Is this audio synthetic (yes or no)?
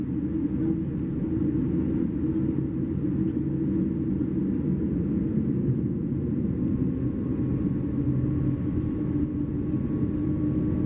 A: no